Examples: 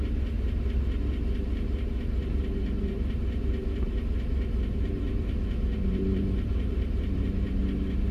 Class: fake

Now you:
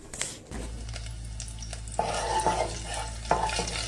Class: real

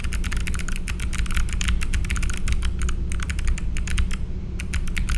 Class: real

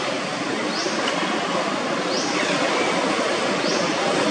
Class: real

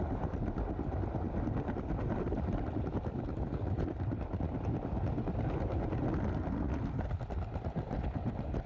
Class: real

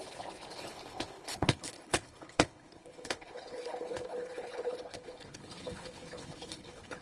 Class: fake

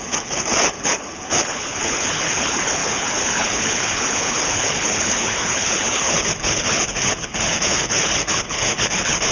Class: fake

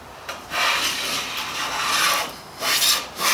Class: fake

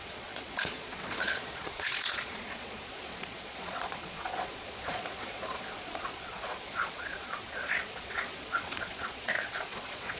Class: fake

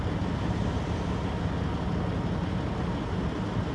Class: real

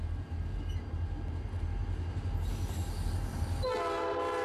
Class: real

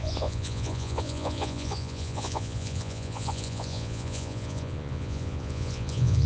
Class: fake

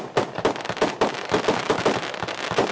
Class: real